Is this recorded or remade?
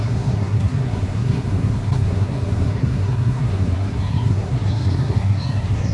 remade